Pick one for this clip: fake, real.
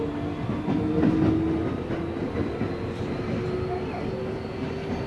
real